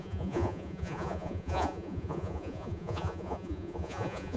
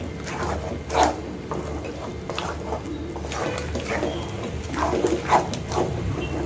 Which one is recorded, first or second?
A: second